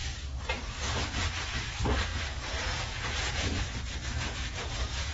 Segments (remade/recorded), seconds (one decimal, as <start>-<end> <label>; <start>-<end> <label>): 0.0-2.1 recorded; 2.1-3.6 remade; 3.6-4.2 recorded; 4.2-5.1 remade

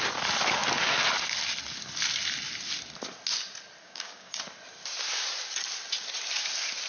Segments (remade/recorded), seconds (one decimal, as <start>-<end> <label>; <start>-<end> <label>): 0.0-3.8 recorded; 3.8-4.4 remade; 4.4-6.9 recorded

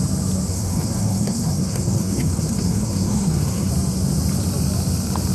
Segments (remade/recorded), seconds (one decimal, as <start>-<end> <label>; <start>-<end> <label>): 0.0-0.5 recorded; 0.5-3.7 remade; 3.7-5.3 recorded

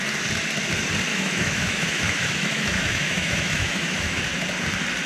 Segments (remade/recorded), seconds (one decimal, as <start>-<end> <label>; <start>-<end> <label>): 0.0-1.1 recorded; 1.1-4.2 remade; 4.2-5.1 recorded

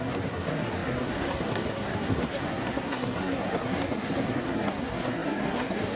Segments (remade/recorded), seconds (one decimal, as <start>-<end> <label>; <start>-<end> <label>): 0.0-6.0 remade